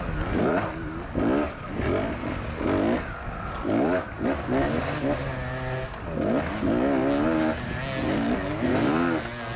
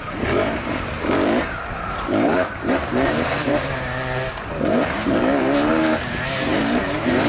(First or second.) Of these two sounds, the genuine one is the first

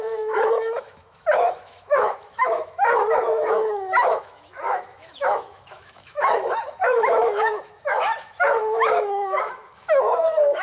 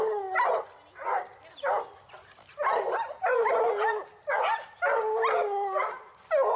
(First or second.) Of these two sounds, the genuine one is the second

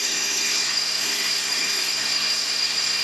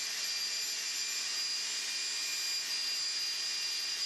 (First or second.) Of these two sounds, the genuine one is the second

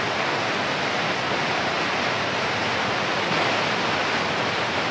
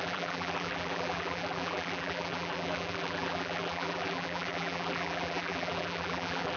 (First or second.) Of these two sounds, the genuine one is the first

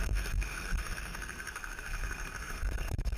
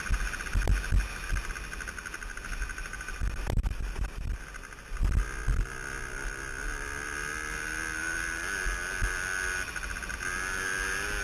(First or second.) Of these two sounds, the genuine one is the second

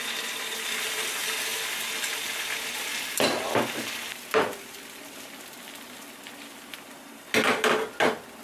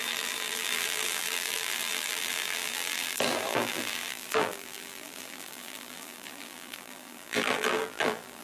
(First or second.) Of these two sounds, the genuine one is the first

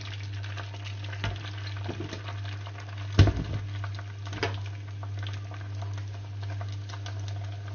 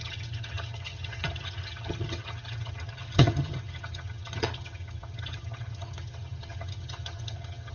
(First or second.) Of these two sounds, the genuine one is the first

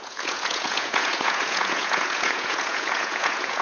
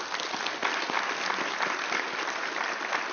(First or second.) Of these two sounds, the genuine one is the second